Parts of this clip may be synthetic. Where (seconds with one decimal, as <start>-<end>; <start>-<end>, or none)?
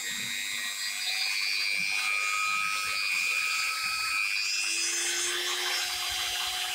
3.1-4.1; 5.7-6.7